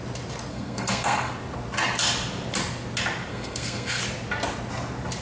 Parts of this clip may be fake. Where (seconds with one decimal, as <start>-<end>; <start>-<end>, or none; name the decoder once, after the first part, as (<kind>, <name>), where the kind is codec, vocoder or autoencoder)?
0.5-1.3 (codec, SNAC); 3.3-4.0

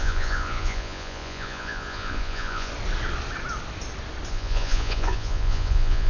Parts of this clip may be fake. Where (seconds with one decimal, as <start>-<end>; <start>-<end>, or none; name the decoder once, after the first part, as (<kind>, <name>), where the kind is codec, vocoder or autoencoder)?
0.0-2.7 (vocoder, Vocos); 4.3-6.1

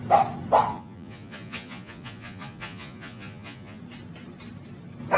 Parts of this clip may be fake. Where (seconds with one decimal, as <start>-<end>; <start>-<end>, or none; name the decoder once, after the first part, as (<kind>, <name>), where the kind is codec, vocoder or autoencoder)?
0.7-3.8 (vocoder, Vocos)

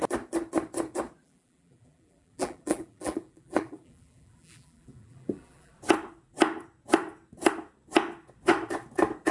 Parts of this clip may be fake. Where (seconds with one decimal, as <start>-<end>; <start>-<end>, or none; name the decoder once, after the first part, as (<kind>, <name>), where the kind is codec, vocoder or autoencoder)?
1.2-5.7 (vocoder, BigVGAN v2)

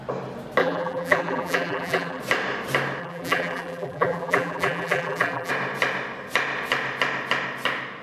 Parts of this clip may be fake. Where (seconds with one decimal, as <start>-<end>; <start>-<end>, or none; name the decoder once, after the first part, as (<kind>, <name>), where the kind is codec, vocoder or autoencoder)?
0.6-2.2 (vocoder, BigVGAN v2); 3.0-5.5

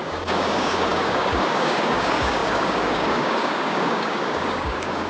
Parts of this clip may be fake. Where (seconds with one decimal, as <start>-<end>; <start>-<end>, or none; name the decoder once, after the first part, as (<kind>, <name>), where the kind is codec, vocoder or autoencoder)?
0.0-5.1 (codec, DAC)